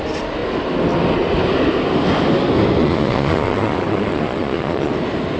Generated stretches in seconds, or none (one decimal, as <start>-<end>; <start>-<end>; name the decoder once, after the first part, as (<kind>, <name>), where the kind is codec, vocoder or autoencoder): 2.8-4.9 (vocoder, Vocos)